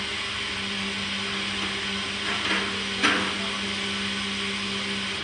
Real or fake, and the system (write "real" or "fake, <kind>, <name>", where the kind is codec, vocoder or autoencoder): real